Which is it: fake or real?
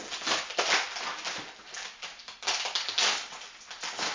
real